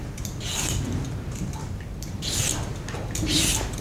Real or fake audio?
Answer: real